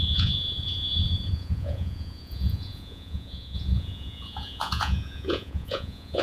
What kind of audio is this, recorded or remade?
remade